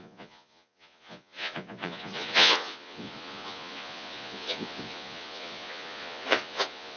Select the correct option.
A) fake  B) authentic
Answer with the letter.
A